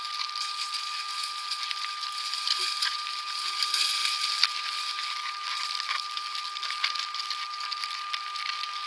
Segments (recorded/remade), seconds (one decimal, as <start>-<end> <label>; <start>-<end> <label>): 0.0-8.9 recorded